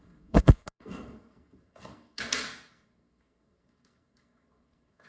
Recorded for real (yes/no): no